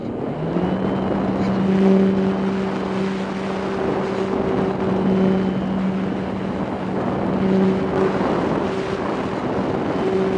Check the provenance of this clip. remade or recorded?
recorded